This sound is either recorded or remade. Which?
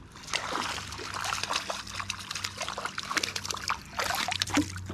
recorded